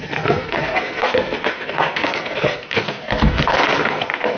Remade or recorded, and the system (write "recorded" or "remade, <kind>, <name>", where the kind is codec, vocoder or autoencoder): remade, codec, SNAC